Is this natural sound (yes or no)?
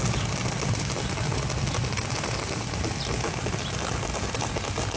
yes